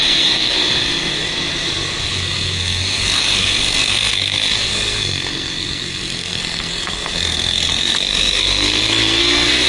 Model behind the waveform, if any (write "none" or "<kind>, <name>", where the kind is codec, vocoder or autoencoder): codec, SNAC